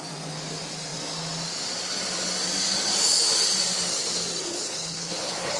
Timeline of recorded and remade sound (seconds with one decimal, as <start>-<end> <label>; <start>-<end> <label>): 0.0-4.5 recorded; 4.5-5.6 remade